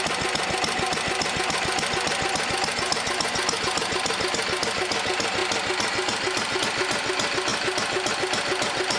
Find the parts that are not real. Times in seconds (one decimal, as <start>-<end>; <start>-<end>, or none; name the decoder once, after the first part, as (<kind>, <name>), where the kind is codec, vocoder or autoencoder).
none